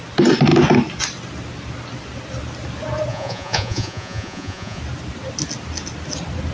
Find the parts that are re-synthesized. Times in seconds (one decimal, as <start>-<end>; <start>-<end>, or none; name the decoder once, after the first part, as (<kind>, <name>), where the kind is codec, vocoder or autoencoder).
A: 3.1-4.8 (vocoder, Vocos)